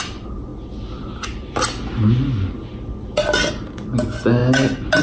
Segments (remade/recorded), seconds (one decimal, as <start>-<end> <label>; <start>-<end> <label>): 0.0-5.0 recorded